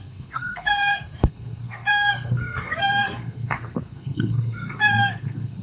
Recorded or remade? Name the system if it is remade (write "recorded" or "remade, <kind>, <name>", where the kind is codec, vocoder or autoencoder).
remade, codec, SNAC